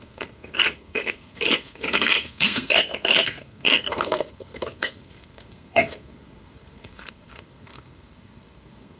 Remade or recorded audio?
remade